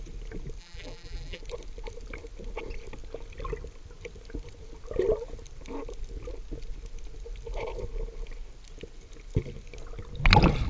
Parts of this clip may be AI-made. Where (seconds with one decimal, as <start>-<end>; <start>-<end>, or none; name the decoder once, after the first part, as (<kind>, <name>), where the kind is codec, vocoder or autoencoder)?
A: 0.6-1.4 (vocoder, BigVGAN v2)